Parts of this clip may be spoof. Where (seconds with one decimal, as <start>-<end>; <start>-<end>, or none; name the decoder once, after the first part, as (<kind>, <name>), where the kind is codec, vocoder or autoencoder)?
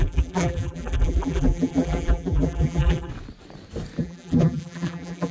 0.0-3.1 (vocoder, BigVGAN v2); 4.0-5.3